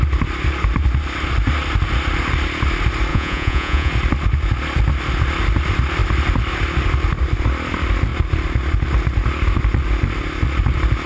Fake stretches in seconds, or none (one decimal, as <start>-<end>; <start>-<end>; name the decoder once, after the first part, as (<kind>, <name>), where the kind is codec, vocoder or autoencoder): 3.1-3.9 (vocoder, Vocos)